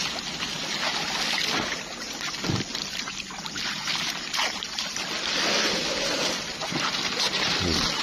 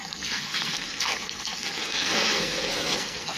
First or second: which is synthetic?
second